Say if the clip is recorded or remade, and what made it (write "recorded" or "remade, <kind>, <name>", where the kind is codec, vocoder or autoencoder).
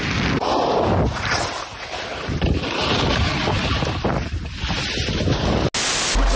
recorded